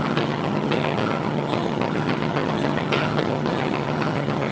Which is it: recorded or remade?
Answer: remade